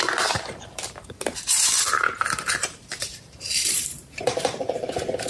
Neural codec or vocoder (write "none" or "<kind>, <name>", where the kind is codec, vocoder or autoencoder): vocoder, BigVGAN v2